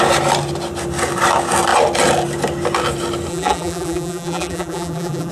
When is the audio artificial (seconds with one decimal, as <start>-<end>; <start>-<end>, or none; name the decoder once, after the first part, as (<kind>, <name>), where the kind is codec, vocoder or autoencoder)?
3.3-5.3 (vocoder, BigVGAN v2)